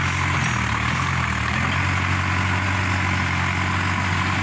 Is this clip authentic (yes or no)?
yes